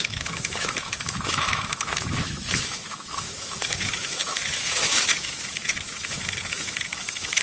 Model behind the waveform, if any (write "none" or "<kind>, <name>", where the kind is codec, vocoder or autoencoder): autoencoder, DAC-VAE